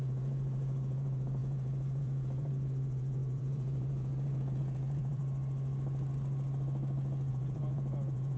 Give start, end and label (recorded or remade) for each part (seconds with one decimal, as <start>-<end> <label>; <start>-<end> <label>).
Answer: 0.0-5.2 remade; 5.2-7.3 recorded; 7.3-8.4 remade